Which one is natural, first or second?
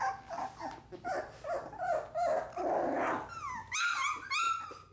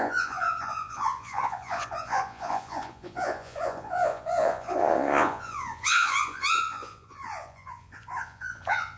first